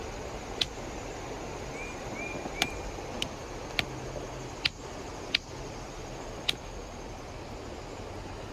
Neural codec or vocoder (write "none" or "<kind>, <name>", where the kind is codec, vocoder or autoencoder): none